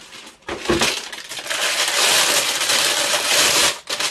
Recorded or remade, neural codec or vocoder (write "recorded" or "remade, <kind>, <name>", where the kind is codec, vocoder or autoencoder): recorded